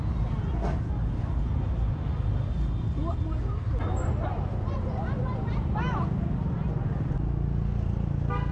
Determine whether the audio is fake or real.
real